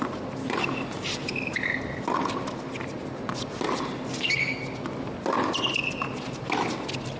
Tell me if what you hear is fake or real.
real